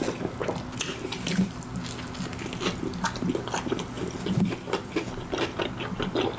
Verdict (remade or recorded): recorded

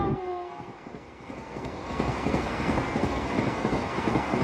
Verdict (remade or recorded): remade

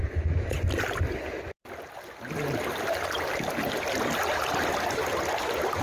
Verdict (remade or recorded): recorded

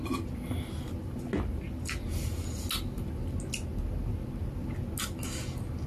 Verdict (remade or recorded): recorded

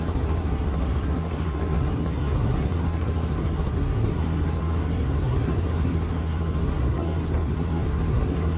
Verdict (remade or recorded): remade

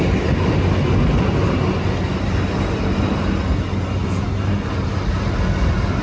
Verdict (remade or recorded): recorded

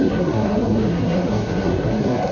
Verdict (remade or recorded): remade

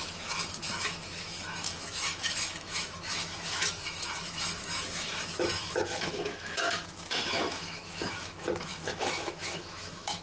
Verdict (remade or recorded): remade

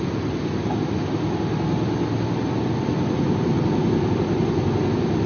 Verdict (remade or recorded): recorded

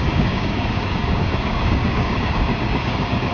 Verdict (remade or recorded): remade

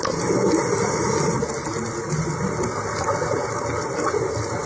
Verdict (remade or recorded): recorded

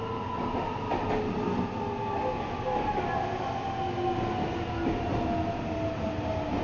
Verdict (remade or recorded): recorded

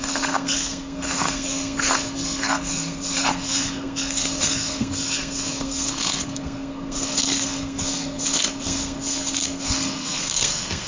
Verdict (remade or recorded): remade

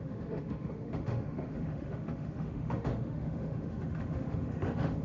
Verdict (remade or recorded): remade